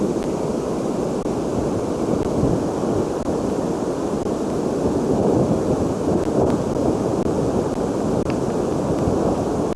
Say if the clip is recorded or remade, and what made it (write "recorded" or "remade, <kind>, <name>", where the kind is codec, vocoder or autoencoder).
recorded